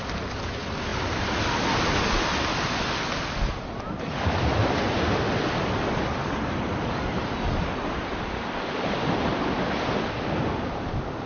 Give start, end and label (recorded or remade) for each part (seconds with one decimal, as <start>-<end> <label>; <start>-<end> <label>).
0.0-11.3 recorded